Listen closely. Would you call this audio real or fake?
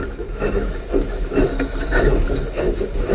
fake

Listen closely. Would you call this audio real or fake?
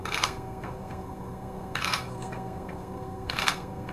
fake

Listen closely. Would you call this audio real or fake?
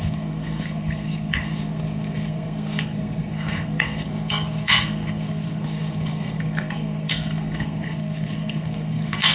fake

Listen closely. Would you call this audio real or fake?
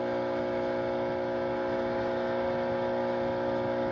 real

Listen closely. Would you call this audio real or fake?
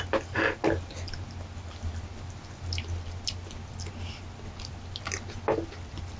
real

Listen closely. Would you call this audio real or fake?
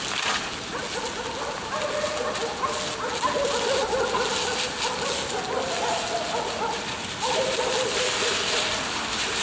real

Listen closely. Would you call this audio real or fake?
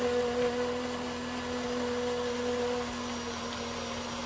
real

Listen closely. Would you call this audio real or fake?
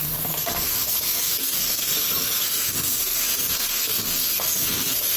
fake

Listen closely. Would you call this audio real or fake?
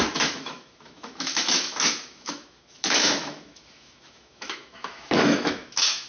fake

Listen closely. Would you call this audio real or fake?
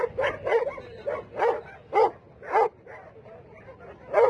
real